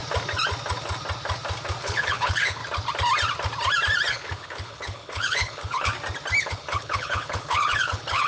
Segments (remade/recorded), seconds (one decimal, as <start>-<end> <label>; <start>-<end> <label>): 0.0-1.8 recorded; 1.8-2.6 remade; 2.6-4.1 recorded; 4.1-5.9 remade; 5.9-6.4 recorded; 6.4-8.3 remade

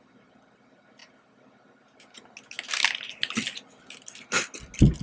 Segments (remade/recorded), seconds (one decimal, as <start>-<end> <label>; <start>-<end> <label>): 0.0-5.0 recorded

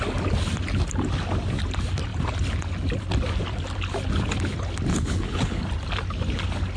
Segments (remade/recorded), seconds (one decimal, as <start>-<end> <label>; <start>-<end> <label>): 0.0-4.9 recorded; 4.9-5.6 remade; 5.6-6.8 recorded

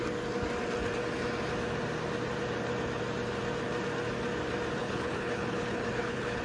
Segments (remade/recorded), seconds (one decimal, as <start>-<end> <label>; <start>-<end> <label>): 0.0-4.8 recorded; 4.8-6.4 remade

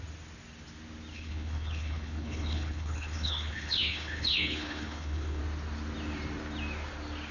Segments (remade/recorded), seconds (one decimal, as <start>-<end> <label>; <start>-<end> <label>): 0.0-1.1 recorded; 1.1-5.4 remade; 5.4-7.3 recorded

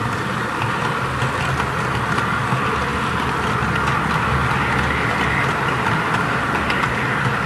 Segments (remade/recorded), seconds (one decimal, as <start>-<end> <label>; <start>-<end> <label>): 0.0-7.5 recorded

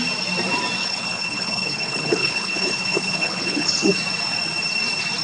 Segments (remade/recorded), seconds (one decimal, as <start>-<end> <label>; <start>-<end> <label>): 0.0-0.8 recorded; 0.8-3.9 remade; 3.9-5.2 recorded